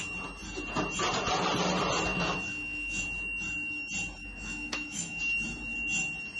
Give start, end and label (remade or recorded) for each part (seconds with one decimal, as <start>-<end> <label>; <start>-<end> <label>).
0.0-2.1 recorded; 2.1-3.0 remade; 3.0-4.2 recorded; 4.2-5.2 remade; 5.2-6.4 recorded